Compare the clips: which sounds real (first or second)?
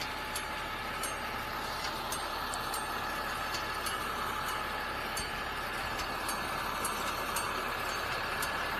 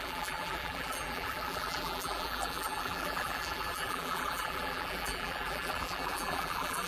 first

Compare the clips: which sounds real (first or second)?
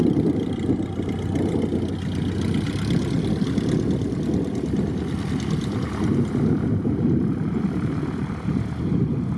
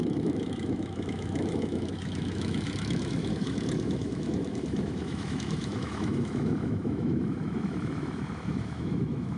first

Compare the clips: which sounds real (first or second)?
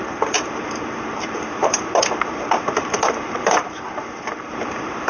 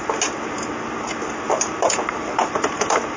second